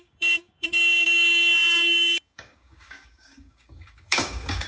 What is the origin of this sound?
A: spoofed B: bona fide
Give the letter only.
A